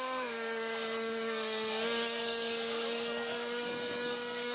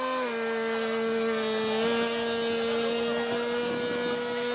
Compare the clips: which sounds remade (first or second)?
first